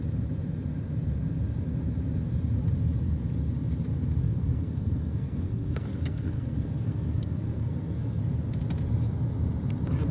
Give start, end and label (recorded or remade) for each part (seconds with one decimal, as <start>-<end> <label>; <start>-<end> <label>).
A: 0.0-4.2 recorded; 4.2-8.2 remade; 8.2-10.1 recorded